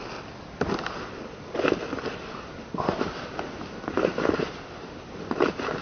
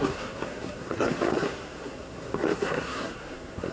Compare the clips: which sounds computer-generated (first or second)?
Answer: second